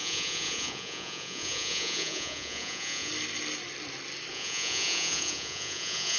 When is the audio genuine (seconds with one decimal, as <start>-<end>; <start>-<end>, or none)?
3.1-4.3